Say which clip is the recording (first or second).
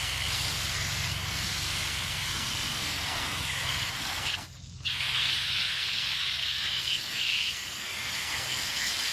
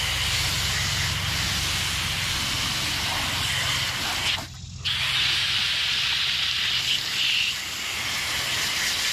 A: second